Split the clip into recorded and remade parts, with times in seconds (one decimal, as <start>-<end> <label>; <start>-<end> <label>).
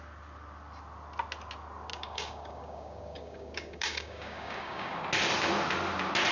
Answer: 0.0-1.9 recorded; 1.9-5.0 remade; 5.0-6.3 recorded